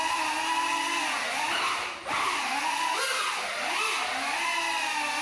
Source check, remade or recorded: recorded